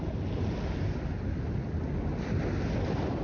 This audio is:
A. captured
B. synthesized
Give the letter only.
A